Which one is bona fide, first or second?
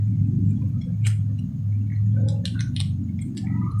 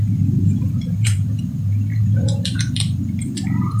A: first